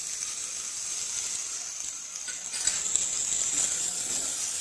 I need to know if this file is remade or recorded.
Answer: recorded